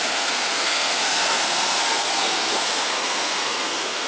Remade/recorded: remade